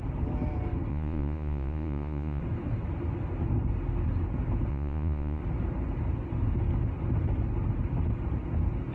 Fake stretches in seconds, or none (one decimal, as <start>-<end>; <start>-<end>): 0.9-2.4; 4.7-5.4